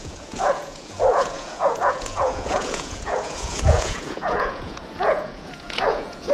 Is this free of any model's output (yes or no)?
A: no